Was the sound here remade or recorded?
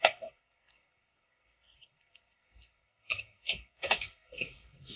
remade